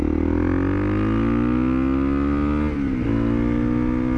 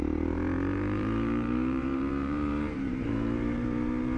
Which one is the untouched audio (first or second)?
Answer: first